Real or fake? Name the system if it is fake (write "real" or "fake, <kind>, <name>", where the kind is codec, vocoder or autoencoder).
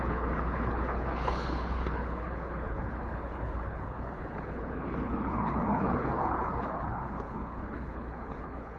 fake, codec, HILCodec